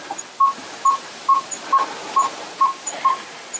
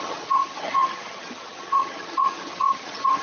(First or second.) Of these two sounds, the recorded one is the first